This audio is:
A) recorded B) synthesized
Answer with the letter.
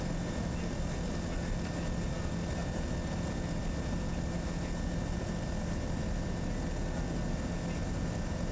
A